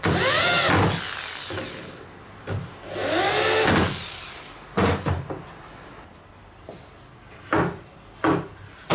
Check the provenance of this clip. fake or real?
real